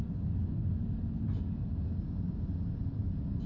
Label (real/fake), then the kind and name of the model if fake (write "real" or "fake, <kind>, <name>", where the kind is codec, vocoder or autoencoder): real